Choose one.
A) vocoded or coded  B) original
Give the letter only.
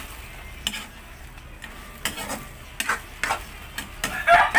B